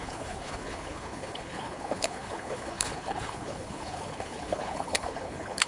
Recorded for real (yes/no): no